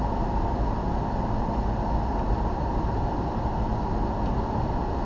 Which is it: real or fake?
real